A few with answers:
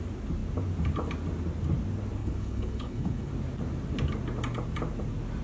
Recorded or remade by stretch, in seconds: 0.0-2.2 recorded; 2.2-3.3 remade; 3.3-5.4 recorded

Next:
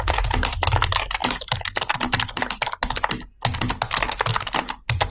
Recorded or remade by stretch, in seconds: 0.0-5.1 recorded

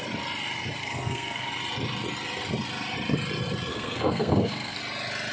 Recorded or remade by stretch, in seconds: 0.0-0.8 recorded; 0.8-1.5 remade; 1.5-3.7 recorded; 3.7-4.8 remade; 4.8-5.3 recorded

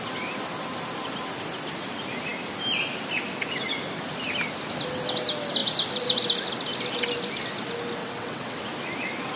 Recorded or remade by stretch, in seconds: 0.0-8.0 recorded; 8.0-8.6 remade; 8.6-9.4 recorded

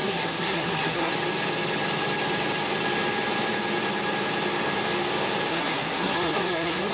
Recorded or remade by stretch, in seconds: 0.0-1.1 remade; 1.1-5.5 recorded; 5.5-6.9 remade

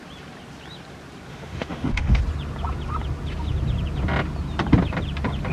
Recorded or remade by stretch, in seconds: 0.0-1.3 recorded; 1.3-2.2 remade; 2.2-5.5 recorded

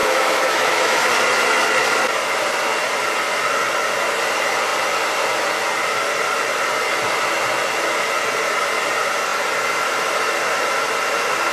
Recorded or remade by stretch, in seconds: 0.0-1.1 remade; 1.1-11.5 recorded

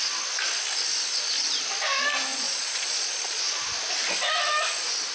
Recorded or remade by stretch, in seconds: 0.0-2.3 recorded; 2.3-3.4 remade; 3.4-5.1 recorded